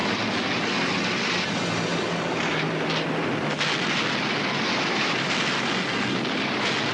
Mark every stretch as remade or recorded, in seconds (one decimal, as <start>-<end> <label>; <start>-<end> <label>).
0.0-6.9 recorded